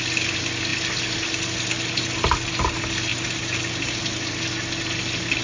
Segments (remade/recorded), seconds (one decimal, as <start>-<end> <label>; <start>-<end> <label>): 0.0-5.4 recorded